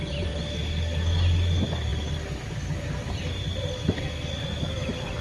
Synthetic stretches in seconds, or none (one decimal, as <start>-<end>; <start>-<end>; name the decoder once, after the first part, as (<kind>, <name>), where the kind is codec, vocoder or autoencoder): none